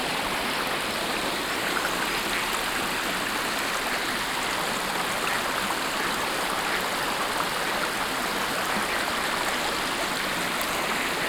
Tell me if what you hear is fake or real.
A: real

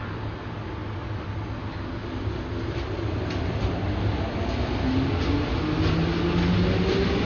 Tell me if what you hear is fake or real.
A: real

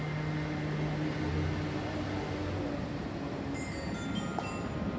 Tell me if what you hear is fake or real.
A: real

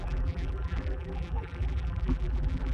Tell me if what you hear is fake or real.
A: fake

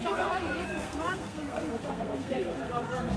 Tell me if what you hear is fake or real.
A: fake